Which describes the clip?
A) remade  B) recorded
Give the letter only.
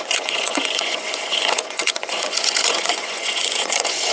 A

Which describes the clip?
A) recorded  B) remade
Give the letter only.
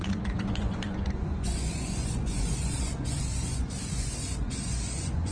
B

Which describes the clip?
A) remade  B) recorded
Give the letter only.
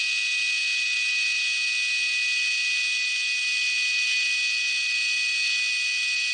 B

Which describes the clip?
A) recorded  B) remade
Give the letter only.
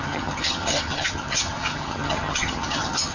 B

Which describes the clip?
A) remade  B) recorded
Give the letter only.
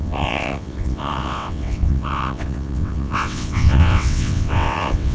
A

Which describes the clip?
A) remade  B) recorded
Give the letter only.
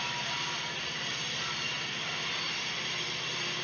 B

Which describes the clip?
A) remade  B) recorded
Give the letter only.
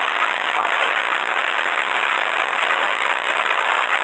A